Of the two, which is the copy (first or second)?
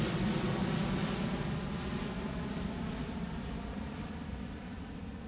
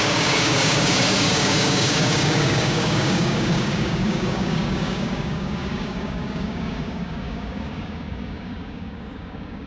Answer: second